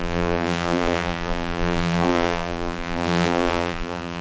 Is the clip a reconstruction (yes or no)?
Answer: yes